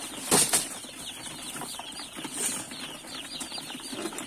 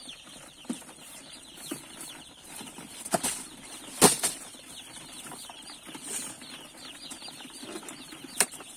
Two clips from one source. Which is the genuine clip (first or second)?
first